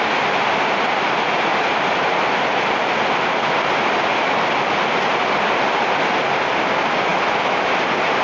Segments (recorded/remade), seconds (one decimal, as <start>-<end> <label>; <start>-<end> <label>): 0.0-7.1 recorded; 7.1-7.7 remade; 7.7-8.2 recorded